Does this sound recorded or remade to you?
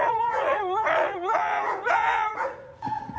remade